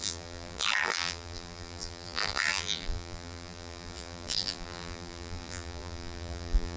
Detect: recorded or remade remade